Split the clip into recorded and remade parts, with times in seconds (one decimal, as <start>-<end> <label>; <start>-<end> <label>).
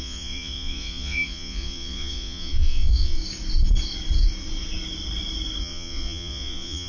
0.0-3.2 remade; 3.2-5.6 recorded; 5.6-6.9 remade